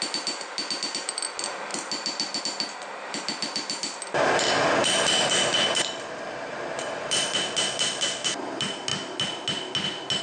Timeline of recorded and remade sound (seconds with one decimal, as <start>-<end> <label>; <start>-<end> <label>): 0.0-10.2 recorded

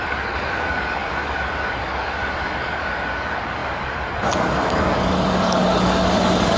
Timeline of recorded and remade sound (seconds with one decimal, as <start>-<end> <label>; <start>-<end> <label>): 0.0-6.6 remade